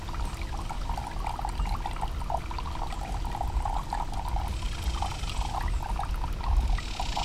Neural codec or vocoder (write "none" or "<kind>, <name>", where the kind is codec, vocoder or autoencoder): none